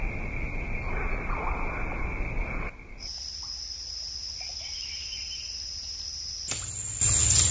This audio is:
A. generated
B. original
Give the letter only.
B